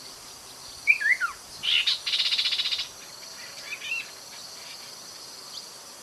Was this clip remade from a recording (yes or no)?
no